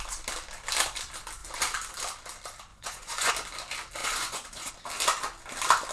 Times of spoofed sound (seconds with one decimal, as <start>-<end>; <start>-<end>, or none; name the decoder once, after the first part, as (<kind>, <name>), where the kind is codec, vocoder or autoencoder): 2.7-3.3 (vocoder, Vocos); 4.0-4.7